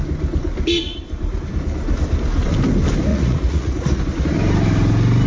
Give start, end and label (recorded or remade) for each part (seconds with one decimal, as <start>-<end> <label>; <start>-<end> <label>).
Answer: 0.0-3.1 recorded; 3.1-4.0 remade; 4.0-5.3 recorded